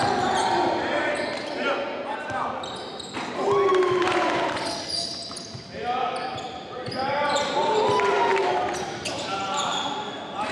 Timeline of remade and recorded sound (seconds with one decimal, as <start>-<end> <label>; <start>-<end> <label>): 0.0-8.3 recorded; 8.3-9.8 remade; 9.8-10.5 recorded

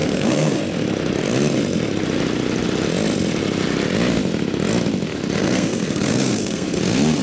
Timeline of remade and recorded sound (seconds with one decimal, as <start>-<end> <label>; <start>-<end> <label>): 0.0-0.6 remade; 0.6-5.4 recorded; 5.4-6.8 remade; 6.8-7.2 recorded

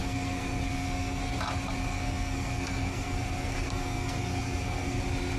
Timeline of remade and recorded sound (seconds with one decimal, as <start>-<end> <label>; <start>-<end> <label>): 0.0-1.2 remade; 1.2-1.8 recorded; 1.8-5.0 remade; 5.0-5.4 recorded

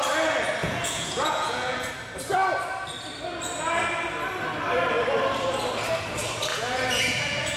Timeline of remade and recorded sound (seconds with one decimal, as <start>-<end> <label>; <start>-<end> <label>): 0.0-0.6 recorded; 0.6-1.9 remade; 1.9-6.5 recorded; 6.5-7.6 remade

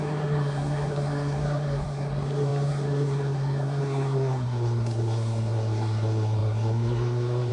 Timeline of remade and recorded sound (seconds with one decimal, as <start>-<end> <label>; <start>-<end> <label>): 0.0-7.5 remade

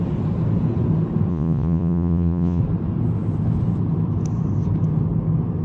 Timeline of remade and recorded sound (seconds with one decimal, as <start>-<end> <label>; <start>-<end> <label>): 0.0-1.3 recorded; 1.3-2.6 remade; 2.6-5.6 recorded

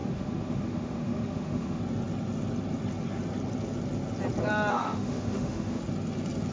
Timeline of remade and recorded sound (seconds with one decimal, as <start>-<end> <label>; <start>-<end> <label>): 0.0-1.8 remade; 1.8-4.7 recorded; 4.7-5.8 remade; 5.8-6.5 recorded

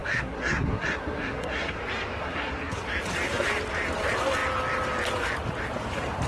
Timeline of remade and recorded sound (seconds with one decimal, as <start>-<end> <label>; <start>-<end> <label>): 0.0-1.8 remade; 1.8-2.2 recorded; 2.2-2.8 remade; 2.8-6.3 recorded